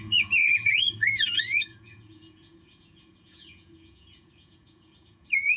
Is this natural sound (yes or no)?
no